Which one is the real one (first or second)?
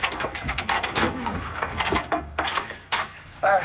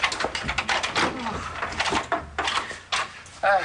second